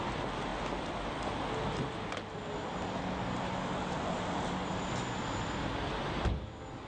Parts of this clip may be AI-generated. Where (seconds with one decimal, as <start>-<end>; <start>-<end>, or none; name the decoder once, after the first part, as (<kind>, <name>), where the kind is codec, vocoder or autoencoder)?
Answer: 3.7-4.5 (vocoder, BigVGAN v2)